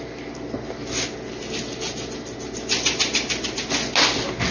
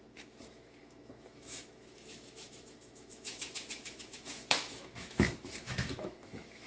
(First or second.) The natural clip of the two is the first